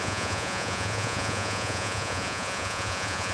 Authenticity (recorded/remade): remade